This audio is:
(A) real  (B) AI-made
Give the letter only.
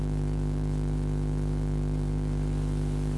B